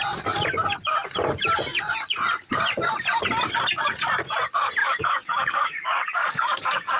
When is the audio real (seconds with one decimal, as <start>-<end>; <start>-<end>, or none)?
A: 0.0-4.8